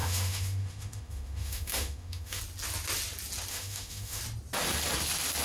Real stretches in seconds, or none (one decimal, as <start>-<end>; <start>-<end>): 2.4-3.5; 4.2-5.4